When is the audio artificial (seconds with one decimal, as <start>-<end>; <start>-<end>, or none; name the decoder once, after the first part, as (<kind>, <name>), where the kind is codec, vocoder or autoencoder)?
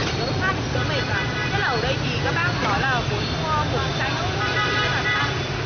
none